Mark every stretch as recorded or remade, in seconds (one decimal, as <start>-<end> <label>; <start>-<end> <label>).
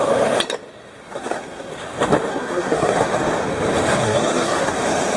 0.0-1.0 recorded; 1.0-1.7 remade; 1.7-2.3 recorded; 2.3-3.1 remade; 3.1-4.0 recorded; 4.0-4.7 remade; 4.7-5.2 recorded